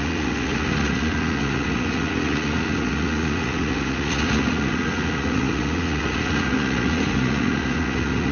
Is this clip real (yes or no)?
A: no